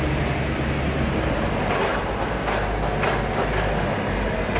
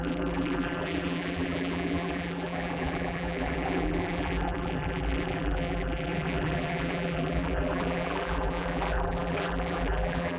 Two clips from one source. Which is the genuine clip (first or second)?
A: first